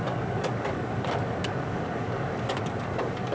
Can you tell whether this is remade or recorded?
remade